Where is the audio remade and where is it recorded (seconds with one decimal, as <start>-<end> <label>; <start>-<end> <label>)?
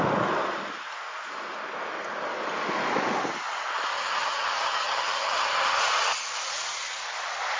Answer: 0.0-3.9 recorded; 3.9-5.8 remade; 5.8-7.6 recorded